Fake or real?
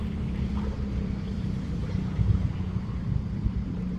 fake